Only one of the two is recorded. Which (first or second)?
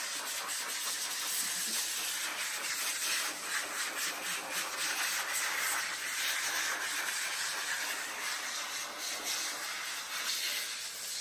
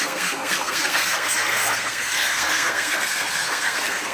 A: first